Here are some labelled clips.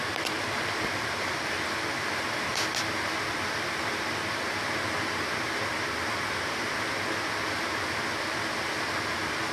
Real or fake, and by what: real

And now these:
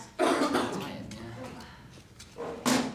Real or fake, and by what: real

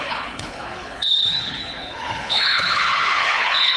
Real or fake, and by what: fake, codec, HILCodec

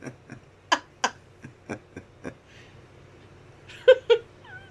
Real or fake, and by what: real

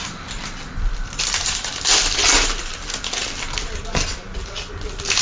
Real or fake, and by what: fake, vocoder, BigVGAN v2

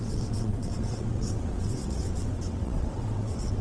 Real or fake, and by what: fake, vocoder, WaveNeXt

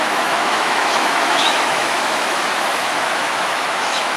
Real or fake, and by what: fake, autoencoder, DAC-VAE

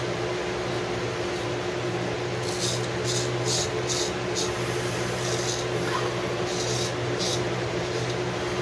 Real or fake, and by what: real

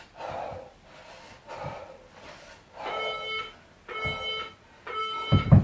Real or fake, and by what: real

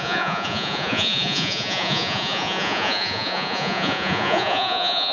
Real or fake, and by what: fake, vocoder, Vocos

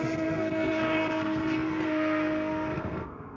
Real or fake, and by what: fake, codec, SNAC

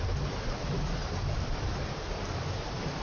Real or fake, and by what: real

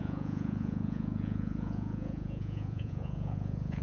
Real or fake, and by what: fake, vocoder, Vocos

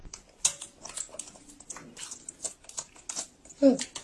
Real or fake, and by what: real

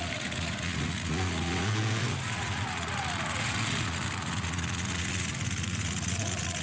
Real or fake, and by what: fake, vocoder, Vocos